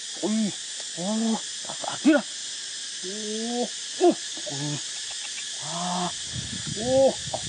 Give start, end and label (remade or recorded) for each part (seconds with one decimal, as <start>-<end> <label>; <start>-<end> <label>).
0.0-7.5 recorded

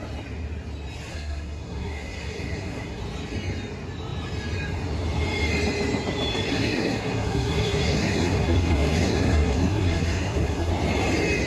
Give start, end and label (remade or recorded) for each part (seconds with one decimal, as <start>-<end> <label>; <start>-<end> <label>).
0.0-1.1 recorded; 1.1-3.0 remade; 3.0-6.5 recorded; 6.5-10.7 remade; 10.7-11.5 recorded